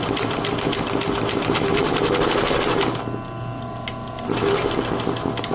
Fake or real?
real